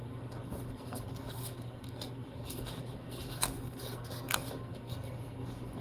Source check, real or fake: fake